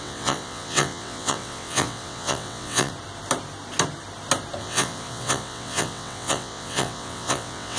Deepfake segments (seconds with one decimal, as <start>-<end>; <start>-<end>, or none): 0.0-2.9; 4.6-7.8

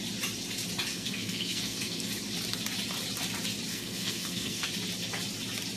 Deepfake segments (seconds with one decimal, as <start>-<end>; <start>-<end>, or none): 0.9-2.1; 3.7-4.7

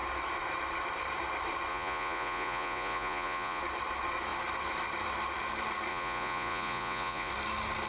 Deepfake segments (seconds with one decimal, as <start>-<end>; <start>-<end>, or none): 1.7-3.6; 5.9-7.3

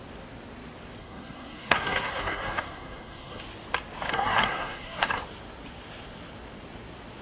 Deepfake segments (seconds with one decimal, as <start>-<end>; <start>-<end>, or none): 1.0-3.4; 4.1-5.2

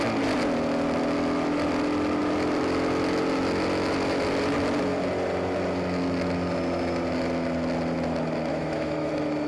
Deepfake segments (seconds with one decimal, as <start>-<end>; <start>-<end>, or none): 8.5-9.1